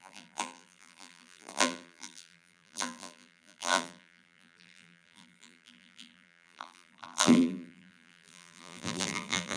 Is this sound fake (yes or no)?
yes